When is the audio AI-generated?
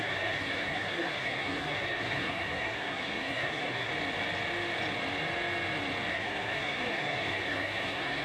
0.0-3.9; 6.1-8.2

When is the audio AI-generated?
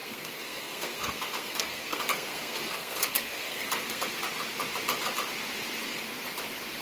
0.0-4.1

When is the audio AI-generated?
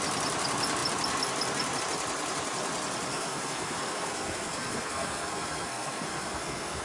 3.1-6.8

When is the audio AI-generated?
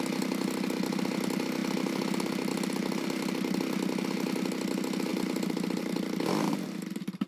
none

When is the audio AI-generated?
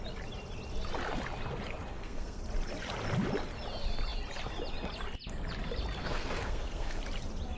1.9-2.4; 6.0-7.0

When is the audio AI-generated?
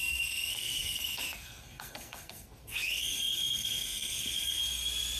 0.0-4.6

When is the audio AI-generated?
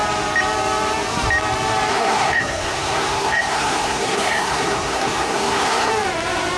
1.9-5.9